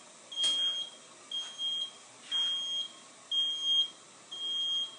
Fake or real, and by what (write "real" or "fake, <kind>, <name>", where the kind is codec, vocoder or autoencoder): real